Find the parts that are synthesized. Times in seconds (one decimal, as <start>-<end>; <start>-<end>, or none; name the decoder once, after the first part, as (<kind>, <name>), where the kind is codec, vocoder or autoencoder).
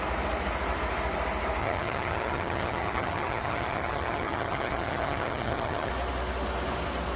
1.6-5.9 (vocoder, HiFi-GAN)